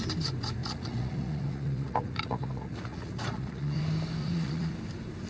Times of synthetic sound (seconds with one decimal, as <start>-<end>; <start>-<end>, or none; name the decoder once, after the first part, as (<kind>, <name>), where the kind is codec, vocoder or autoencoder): 0.6-3.8 (vocoder, Vocos); 4.2-4.7